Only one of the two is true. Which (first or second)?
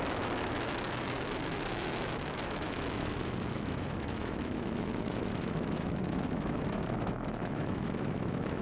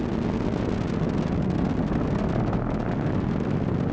second